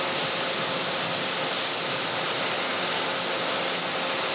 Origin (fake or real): real